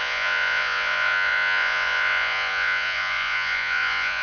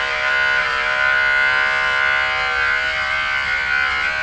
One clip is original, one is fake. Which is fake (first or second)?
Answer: first